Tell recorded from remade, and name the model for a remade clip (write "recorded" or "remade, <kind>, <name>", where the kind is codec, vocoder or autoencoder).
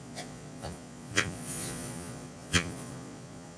remade, vocoder, Vocos